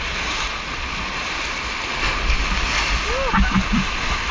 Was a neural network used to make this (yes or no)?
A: no